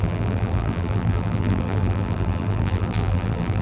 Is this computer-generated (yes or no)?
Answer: yes